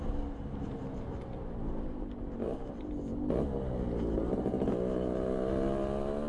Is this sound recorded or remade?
recorded